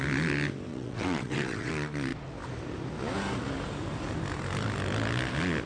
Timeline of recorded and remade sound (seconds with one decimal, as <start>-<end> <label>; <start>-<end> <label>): 0.0-0.7 recorded; 0.7-1.7 remade; 1.7-5.7 recorded